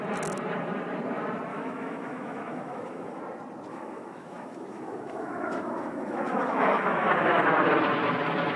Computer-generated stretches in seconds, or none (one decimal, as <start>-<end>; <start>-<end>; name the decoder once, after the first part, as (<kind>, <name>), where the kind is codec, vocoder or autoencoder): 1.5-3.2 (autoencoder, DAC-VAE); 3.7-7.4